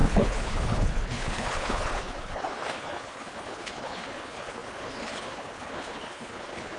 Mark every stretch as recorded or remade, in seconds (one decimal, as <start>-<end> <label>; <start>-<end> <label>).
0.0-6.8 remade